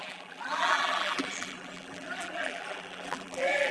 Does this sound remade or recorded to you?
remade